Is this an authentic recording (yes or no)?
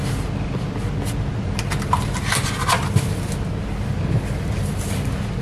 yes